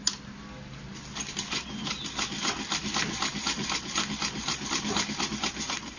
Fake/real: real